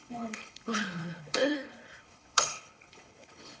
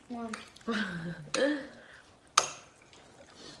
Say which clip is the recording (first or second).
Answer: second